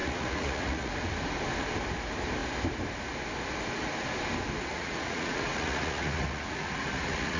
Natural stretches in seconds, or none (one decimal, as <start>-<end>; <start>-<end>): 0.9-4.7